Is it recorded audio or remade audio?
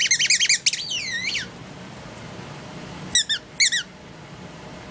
recorded